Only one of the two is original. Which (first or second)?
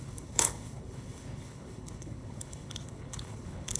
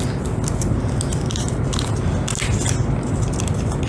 second